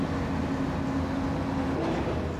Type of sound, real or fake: real